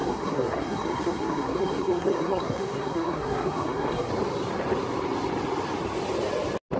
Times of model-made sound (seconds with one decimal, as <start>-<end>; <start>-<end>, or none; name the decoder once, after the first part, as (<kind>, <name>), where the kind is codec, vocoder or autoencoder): 0.0-4.1 (codec, SNAC)